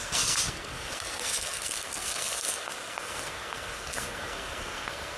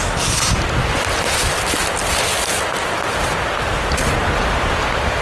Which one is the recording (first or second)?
second